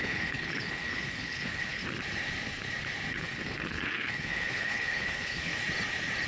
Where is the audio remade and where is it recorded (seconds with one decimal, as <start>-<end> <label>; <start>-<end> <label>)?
0.0-1.8 remade; 1.8-3.1 recorded; 3.1-5.5 remade; 5.5-6.3 recorded